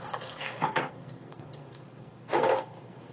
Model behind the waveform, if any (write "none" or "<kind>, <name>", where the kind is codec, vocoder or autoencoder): codec, SNAC